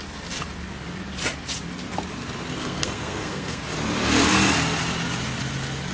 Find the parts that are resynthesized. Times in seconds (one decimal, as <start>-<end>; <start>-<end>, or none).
2.6-3.6